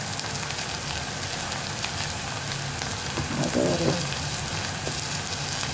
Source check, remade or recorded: recorded